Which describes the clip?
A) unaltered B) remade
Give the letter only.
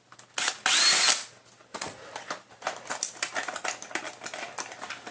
A